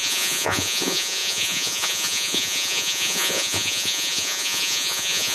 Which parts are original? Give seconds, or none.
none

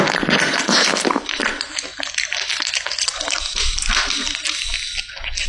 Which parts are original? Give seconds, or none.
0.0-5.5

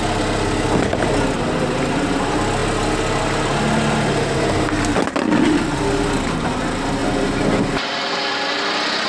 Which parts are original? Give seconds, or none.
0.0-9.1

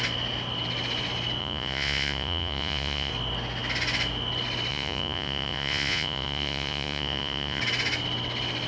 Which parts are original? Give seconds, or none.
0.0-1.4; 3.1-4.7; 7.6-8.7

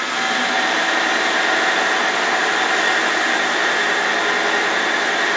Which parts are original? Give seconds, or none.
0.0-5.4